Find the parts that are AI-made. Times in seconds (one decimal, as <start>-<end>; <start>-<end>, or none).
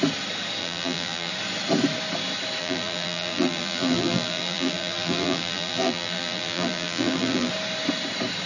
0.6-1.3; 2.6-7.5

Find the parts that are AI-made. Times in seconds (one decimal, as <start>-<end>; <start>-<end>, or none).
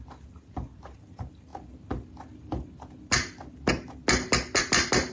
none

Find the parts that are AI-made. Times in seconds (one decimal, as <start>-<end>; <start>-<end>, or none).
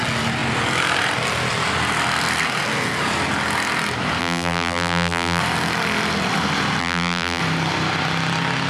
4.2-5.4; 6.8-7.4